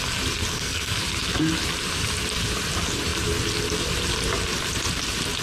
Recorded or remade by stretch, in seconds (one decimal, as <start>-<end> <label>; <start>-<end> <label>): 0.0-0.5 recorded; 0.5-1.0 remade; 1.0-5.4 recorded

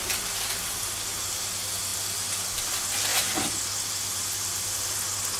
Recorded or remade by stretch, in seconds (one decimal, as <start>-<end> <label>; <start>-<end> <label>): 0.0-5.4 recorded

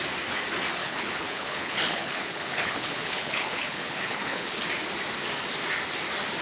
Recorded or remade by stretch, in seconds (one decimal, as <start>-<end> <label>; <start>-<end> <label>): 0.0-0.8 recorded; 0.8-4.6 remade; 4.6-6.4 recorded